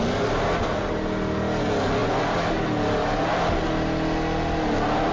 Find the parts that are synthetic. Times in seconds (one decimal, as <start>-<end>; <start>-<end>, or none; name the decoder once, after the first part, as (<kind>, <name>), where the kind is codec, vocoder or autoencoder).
none